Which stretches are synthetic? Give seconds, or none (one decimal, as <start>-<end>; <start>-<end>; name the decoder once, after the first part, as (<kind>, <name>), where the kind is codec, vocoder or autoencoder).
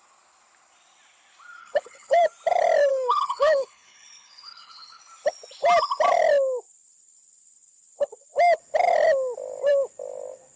1.6-2.2 (codec, HILCodec); 2.9-5.0